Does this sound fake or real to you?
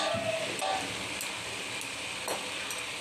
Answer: real